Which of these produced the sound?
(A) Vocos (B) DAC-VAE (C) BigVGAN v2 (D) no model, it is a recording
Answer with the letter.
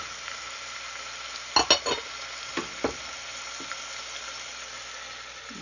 D